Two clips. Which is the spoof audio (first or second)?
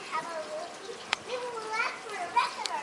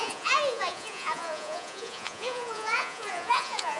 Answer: second